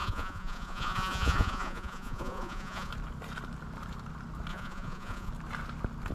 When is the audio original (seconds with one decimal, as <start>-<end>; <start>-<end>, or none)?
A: 2.9-4.5; 5.3-6.1